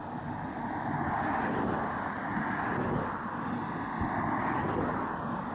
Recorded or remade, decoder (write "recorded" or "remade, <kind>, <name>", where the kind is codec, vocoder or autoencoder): recorded